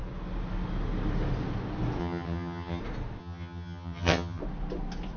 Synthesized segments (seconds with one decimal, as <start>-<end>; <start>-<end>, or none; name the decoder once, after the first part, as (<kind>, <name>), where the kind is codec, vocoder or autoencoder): 2.0-2.8 (vocoder, HiFi-GAN); 3.2-4.4